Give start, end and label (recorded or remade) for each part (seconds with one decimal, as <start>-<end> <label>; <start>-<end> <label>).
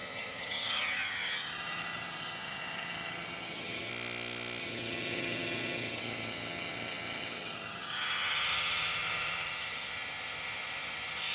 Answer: 0.0-3.9 remade; 3.9-4.6 recorded; 4.6-11.3 remade